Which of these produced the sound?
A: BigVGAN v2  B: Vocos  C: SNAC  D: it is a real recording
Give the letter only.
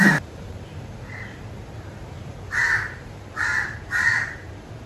A